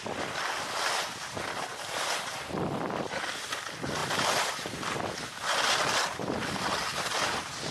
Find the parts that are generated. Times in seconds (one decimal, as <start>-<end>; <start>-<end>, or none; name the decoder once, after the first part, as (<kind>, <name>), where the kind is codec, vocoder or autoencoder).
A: none